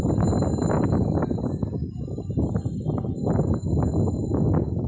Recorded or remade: recorded